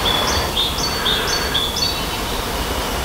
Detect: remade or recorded recorded